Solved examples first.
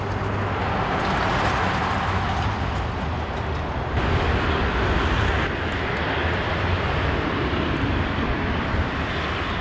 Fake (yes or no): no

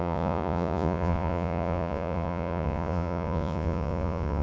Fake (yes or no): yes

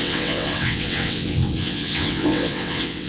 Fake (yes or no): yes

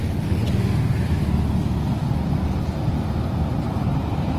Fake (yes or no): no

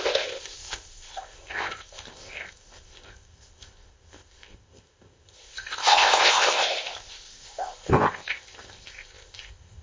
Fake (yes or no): yes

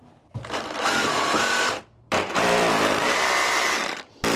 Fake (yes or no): yes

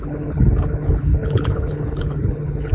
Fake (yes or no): yes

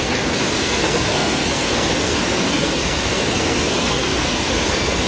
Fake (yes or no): yes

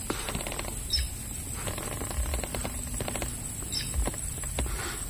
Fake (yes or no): no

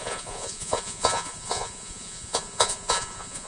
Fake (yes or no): yes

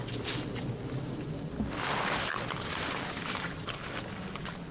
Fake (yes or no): no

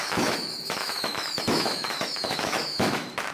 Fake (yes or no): yes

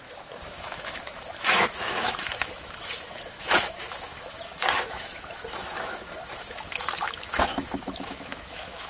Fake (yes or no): yes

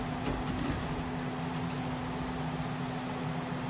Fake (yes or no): no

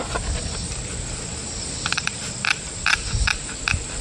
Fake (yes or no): yes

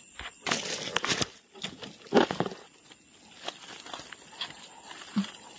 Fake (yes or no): no